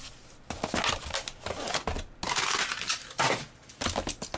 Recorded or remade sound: recorded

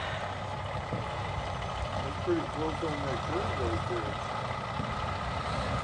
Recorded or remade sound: recorded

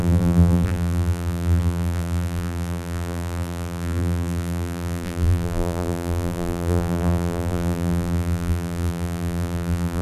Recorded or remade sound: remade